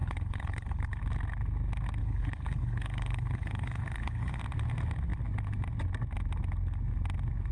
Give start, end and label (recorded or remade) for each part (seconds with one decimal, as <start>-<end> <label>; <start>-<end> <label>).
0.0-1.0 remade; 1.0-2.0 recorded; 2.0-4.4 remade; 4.4-7.5 recorded